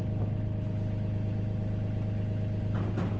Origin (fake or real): real